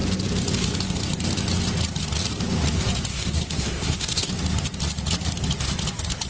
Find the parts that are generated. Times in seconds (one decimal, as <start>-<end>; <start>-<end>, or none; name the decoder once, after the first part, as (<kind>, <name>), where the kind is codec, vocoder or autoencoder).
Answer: 3.1-4.3 (codec, SNAC)